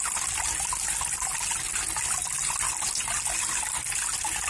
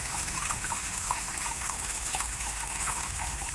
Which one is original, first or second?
first